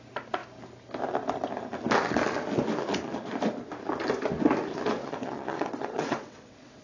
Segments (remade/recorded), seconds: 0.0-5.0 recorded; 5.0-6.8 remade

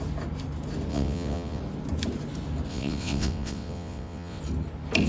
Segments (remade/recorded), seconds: 0.0-0.9 recorded; 0.9-1.6 remade; 1.6-2.7 recorded; 2.7-4.4 remade; 4.4-5.1 recorded

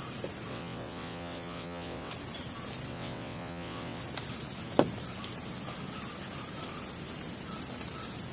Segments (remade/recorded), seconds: 0.0-0.5 recorded; 0.5-2.1 remade; 2.1-2.9 recorded; 2.9-4.0 remade; 4.0-8.3 recorded

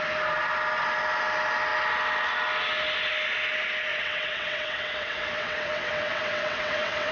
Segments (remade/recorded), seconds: 0.0-3.9 recorded; 3.9-7.1 remade

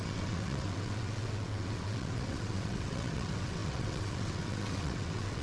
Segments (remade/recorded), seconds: 0.0-5.4 remade